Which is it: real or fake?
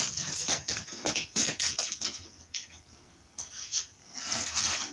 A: fake